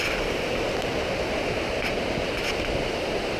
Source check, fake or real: real